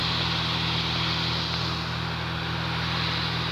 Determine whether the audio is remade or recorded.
recorded